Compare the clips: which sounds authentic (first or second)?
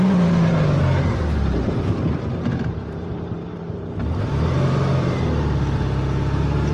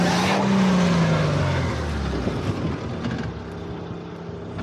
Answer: second